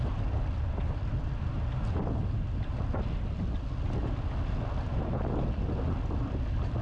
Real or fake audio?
real